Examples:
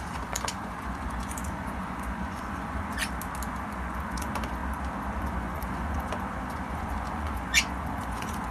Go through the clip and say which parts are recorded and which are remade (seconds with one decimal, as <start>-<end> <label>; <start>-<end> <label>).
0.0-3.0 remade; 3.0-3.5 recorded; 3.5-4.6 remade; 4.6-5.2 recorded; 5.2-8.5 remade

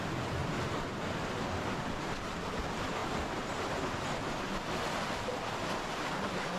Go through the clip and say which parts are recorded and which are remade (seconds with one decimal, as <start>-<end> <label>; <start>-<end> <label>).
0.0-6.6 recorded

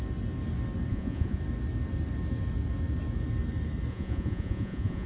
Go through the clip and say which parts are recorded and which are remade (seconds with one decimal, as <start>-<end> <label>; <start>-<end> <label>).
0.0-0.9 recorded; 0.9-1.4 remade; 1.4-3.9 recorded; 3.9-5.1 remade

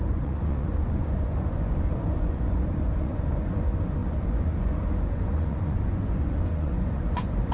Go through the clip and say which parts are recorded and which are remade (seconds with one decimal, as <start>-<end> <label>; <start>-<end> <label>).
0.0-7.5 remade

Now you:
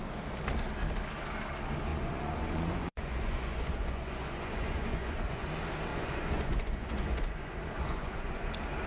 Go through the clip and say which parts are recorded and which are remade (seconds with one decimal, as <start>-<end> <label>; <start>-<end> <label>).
0.0-1.9 recorded; 1.9-5.5 remade; 5.5-5.9 recorded; 5.9-8.5 remade; 8.5-8.9 recorded

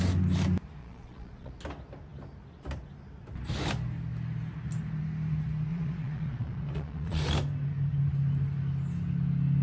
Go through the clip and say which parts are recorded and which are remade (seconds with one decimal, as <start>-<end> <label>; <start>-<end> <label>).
0.0-0.8 recorded; 0.8-1.5 remade; 1.5-5.7 recorded; 5.7-7.2 remade; 7.2-9.6 recorded

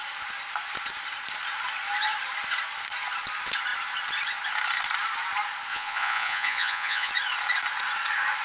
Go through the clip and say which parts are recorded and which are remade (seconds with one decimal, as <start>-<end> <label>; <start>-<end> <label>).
0.0-5.7 recorded; 5.7-7.1 remade; 7.1-8.4 recorded